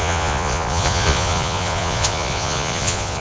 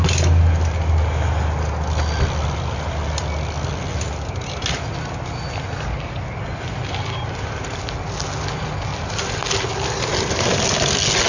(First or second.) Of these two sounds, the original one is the second